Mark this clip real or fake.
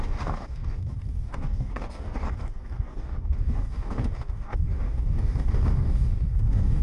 fake